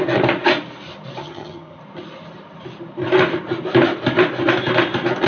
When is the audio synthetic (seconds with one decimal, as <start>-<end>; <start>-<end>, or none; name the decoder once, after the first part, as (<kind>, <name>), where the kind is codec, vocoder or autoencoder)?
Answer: 1.2-1.8 (vocoder, HiFi-GAN)